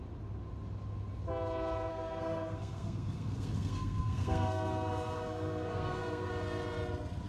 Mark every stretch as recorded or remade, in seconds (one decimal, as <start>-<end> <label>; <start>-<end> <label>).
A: 0.0-1.9 recorded; 1.9-6.3 remade; 6.3-7.3 recorded